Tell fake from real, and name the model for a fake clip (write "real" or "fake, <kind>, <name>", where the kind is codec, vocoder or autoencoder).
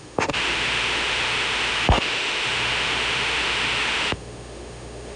fake, autoencoder, DAC-VAE